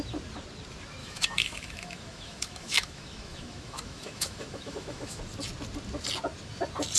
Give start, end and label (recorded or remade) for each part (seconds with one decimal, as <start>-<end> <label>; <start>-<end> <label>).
0.0-1.0 recorded; 1.0-5.2 remade; 5.2-7.0 recorded